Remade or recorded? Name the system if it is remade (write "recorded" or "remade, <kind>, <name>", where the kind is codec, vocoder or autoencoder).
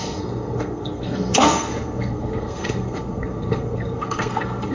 remade, codec, SNAC